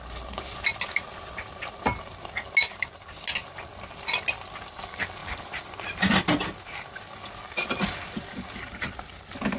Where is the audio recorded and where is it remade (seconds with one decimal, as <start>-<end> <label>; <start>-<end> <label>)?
0.0-9.6 recorded